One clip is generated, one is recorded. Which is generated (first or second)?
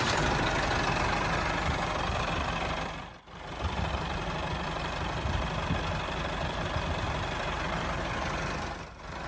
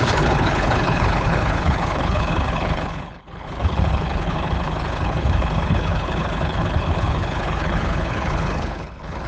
second